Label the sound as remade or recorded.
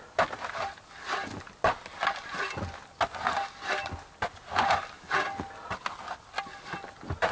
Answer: recorded